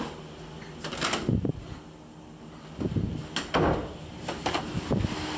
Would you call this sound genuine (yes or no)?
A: yes